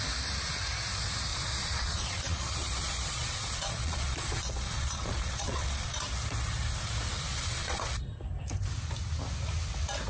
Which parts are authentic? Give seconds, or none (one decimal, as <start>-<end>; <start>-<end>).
0.0-1.3; 6.0-7.3; 7.9-10.1